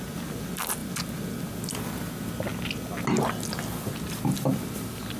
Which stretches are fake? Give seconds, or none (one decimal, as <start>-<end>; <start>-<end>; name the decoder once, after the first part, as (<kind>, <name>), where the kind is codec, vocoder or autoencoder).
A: none

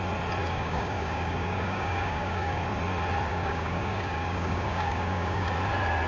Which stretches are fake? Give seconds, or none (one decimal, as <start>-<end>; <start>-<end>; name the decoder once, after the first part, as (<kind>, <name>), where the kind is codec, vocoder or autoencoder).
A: 0.4-2.6 (codec, DAC); 3.3-5.5